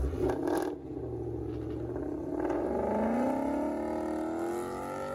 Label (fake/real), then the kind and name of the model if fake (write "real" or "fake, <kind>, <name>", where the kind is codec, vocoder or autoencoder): real